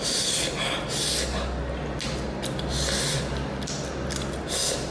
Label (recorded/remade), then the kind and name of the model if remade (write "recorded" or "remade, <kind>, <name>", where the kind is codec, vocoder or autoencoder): recorded